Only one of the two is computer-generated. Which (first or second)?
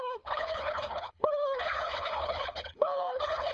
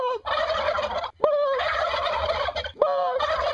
first